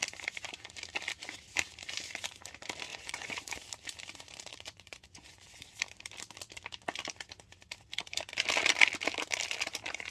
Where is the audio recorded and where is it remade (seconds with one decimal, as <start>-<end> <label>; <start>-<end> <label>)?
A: 0.0-2.9 recorded; 2.9-3.5 remade; 3.5-4.5 recorded; 4.5-5.7 remade; 5.7-10.1 recorded